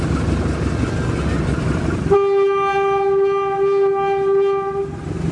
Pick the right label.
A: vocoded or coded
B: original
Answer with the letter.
B